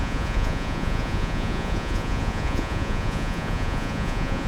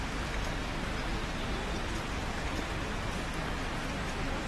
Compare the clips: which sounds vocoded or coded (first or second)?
first